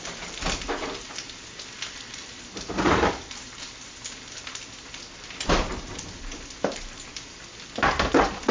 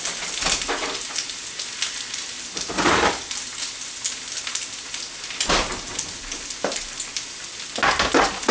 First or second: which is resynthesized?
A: first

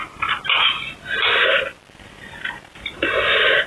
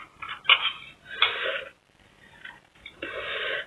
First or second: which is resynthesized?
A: second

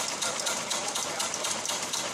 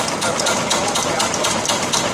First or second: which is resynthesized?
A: first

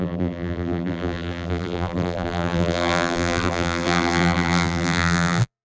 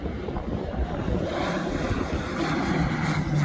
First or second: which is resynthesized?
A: first